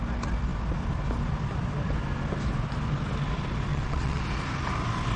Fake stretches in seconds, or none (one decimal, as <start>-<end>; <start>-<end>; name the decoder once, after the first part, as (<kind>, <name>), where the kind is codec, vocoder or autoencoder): 3.7-4.2 (vocoder, WaveNeXt)